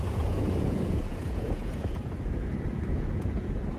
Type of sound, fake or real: fake